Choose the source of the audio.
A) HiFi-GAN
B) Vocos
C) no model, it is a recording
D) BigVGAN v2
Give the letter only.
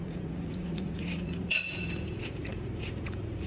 B